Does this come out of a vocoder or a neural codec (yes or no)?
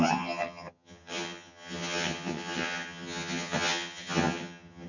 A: yes